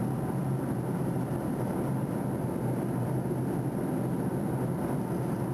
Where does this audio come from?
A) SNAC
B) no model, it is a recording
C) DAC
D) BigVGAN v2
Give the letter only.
B